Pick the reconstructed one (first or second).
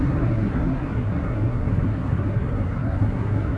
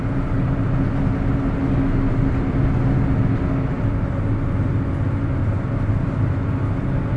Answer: first